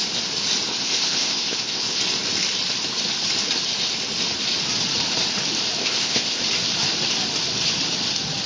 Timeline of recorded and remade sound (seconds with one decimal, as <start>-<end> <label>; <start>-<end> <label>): 0.0-0.7 recorded; 0.7-2.0 remade; 2.0-5.8 recorded; 5.8-6.4 remade; 6.4-8.5 recorded